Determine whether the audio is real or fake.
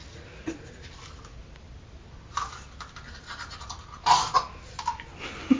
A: real